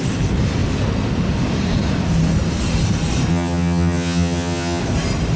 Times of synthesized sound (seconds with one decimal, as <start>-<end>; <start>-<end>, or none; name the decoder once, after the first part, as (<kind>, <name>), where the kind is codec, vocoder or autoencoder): 3.3-4.8 (vocoder, HiFi-GAN)